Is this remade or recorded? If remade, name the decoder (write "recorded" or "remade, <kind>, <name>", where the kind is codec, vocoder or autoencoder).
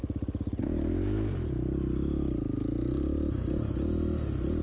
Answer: recorded